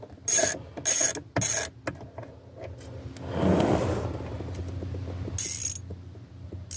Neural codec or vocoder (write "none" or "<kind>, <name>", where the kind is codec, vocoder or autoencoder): none